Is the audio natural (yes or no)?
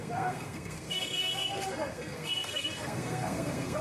no